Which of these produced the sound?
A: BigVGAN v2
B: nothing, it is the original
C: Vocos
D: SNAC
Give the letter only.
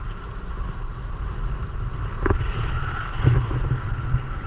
B